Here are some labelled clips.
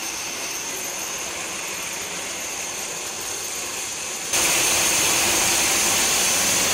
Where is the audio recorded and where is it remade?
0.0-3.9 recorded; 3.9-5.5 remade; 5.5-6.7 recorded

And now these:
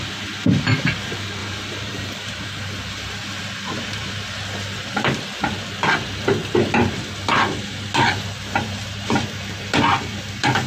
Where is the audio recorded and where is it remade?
0.0-1.4 recorded; 1.4-5.7 remade; 5.7-10.7 recorded

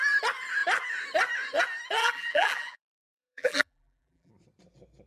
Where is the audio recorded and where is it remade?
0.0-2.0 recorded; 2.0-4.3 remade; 4.3-5.1 recorded

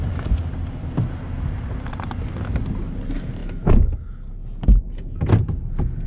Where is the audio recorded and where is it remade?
0.0-6.1 recorded